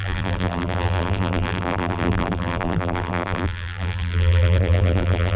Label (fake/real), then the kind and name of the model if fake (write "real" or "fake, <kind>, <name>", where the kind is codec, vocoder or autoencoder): fake, vocoder, BigVGAN v2